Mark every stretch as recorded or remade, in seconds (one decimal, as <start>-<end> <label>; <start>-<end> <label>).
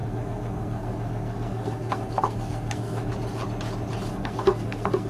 0.0-3.1 remade; 3.1-4.1 recorded; 4.1-5.1 remade